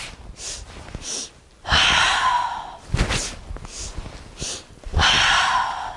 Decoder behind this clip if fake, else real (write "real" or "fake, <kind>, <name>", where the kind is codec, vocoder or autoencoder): real